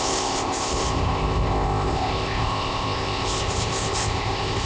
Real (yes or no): no